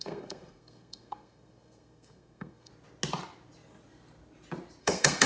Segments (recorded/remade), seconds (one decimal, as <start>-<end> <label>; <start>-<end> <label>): 0.0-2.7 remade; 2.7-4.8 recorded; 4.8-5.3 remade